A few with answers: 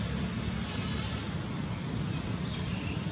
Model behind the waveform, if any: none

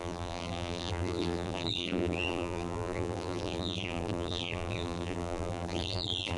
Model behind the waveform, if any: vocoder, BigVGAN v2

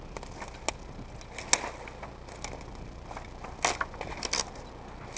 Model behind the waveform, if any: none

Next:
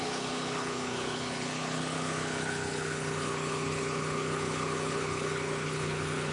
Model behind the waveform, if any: codec, HILCodec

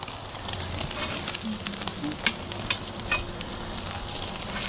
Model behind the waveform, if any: none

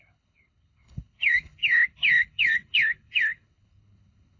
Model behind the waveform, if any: codec, HILCodec